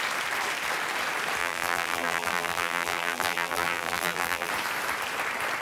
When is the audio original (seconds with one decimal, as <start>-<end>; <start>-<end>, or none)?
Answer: 0.0-1.4; 4.5-5.6

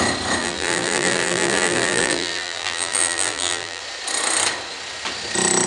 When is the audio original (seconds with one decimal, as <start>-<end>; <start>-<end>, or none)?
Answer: 0.0-0.4; 3.8-5.7